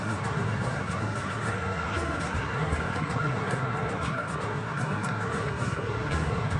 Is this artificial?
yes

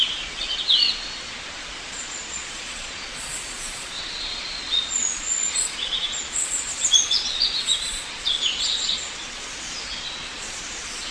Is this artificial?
yes